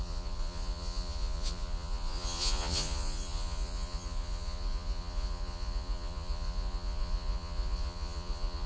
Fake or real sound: fake